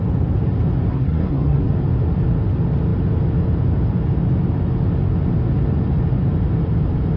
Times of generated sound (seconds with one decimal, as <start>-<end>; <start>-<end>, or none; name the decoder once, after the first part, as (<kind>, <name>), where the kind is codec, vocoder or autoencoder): 0.9-1.7 (codec, SNAC)